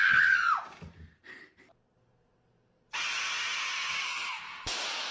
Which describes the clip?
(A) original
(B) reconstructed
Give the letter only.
A